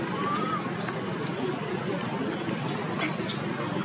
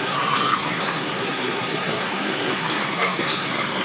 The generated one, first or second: second